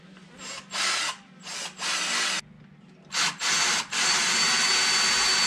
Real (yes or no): yes